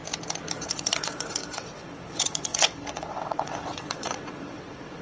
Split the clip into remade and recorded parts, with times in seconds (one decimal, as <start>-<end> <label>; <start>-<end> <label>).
0.0-0.6 recorded; 0.6-5.0 remade